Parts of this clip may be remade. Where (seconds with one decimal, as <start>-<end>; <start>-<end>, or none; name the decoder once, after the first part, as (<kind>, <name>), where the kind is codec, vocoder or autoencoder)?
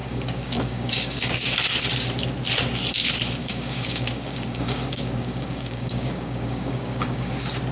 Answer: 0.0-1.2 (codec, DAC); 3.4-7.3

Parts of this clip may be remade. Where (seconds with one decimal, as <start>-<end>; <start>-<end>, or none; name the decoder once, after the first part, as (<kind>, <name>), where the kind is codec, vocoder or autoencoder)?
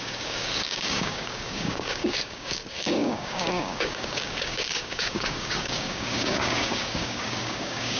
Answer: 0.0-8.0 (codec, DAC)